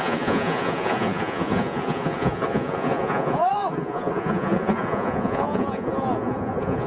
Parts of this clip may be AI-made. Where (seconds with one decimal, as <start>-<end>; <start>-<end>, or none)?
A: 0.0-6.9